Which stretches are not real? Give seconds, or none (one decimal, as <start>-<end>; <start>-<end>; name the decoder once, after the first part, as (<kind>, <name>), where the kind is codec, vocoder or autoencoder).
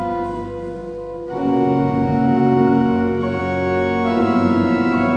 0.0-3.4 (vocoder, BigVGAN v2); 4.2-5.2